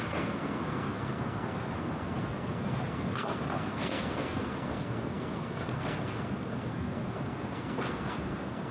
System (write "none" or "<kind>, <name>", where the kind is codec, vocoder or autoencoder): codec, SNAC